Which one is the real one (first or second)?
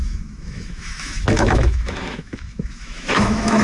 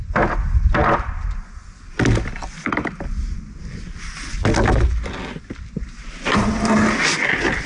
second